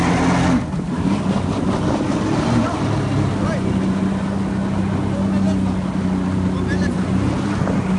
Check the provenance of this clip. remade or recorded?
recorded